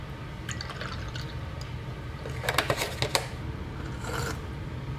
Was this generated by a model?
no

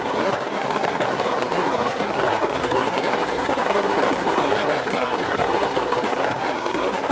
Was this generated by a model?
yes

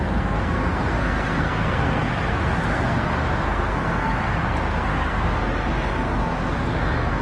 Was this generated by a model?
yes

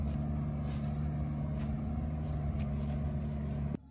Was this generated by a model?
no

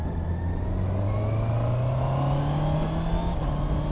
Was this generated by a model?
no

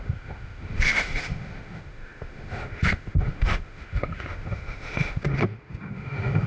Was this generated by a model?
yes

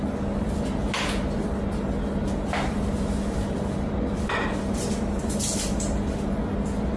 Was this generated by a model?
no